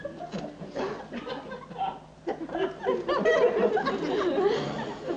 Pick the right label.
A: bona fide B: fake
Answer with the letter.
A